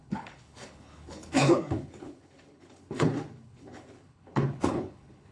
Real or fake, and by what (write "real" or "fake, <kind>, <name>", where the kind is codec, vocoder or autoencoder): fake, codec, HILCodec